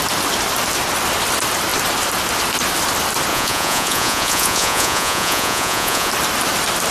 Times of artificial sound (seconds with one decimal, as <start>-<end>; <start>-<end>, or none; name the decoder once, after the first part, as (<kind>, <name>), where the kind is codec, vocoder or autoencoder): 3.3-6.1 (vocoder, Vocos)